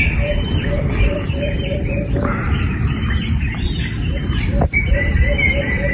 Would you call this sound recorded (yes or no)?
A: no